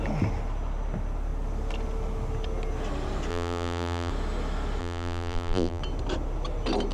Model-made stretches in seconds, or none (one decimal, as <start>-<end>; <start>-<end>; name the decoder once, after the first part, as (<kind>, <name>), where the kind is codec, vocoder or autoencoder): 3.3-4.1 (vocoder, BigVGAN v2); 4.8-5.8